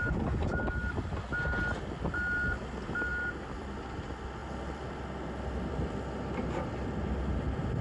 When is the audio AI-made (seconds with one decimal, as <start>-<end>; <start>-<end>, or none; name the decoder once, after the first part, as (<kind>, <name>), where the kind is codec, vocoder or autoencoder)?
4.4-7.8 (vocoder, BigVGAN v2)